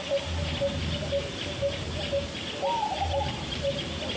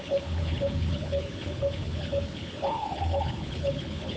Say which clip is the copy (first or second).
second